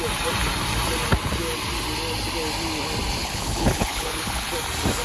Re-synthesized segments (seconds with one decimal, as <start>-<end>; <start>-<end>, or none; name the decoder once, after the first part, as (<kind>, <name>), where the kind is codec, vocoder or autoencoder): 3.2-4.5 (codec, HILCodec)